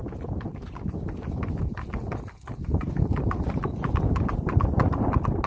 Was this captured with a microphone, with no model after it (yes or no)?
yes